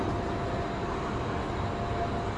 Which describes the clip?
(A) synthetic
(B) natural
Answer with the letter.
B